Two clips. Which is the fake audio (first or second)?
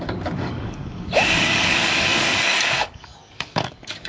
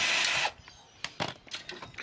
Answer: first